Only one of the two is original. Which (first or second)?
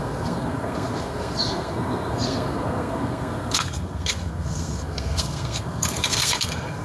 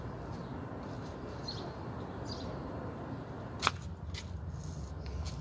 second